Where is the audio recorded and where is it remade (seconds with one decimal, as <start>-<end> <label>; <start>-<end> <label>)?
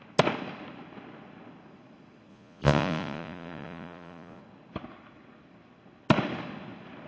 0.0-2.3 recorded; 2.3-4.4 remade; 4.4-7.1 recorded